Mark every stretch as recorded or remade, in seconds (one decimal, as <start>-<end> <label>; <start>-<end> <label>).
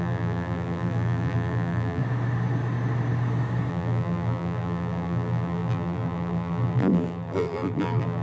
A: 0.0-2.0 remade; 2.0-3.7 recorded; 3.7-8.2 remade